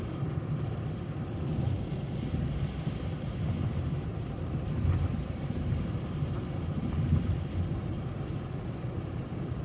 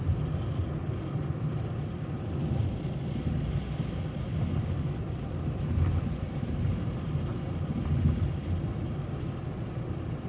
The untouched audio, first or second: second